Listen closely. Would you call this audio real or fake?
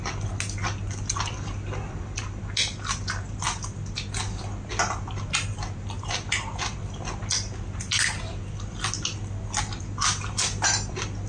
real